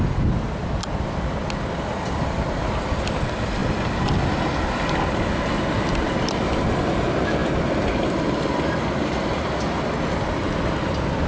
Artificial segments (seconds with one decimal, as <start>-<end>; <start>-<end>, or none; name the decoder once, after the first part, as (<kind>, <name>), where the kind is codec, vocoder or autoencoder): none